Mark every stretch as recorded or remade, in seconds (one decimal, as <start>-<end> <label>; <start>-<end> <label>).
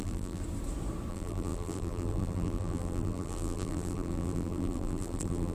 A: 0.0-0.4 remade; 0.4-1.1 recorded; 1.1-5.5 remade